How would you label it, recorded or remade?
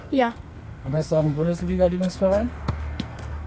remade